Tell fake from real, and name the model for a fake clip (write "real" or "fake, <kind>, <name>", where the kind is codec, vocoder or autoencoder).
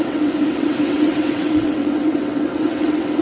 fake, vocoder, WaveNeXt